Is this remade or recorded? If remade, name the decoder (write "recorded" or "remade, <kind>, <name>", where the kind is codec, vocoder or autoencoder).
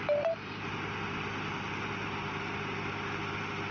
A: recorded